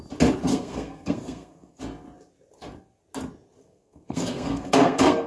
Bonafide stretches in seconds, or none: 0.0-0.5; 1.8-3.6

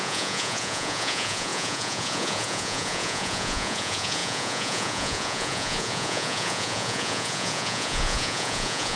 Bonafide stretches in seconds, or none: none

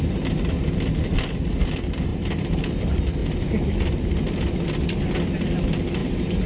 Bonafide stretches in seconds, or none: 0.0-2.1; 2.7-3.2; 4.0-6.0

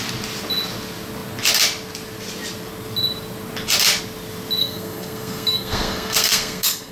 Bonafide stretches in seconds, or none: 0.0-4.6

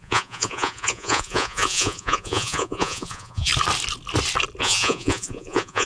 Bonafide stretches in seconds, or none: 3.5-4.6